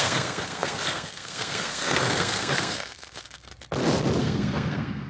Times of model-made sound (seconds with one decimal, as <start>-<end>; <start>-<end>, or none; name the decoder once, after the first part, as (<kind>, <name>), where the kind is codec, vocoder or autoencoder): 0.0-3.5 (codec, SNAC); 4.2-5.1